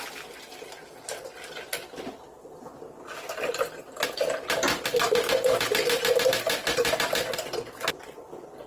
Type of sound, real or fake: real